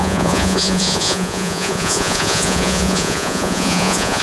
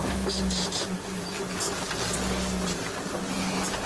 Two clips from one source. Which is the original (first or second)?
second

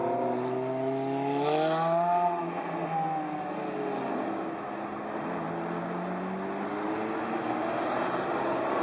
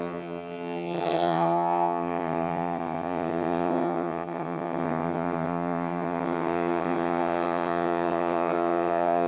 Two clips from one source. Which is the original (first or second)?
first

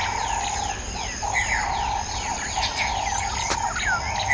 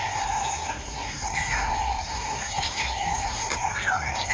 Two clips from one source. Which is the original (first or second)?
first